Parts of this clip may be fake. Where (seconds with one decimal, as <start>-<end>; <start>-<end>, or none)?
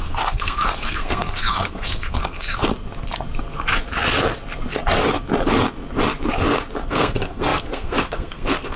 0.0-2.6; 6.9-8.8